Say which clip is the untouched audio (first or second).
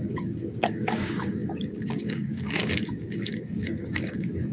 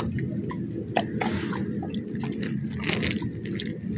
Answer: second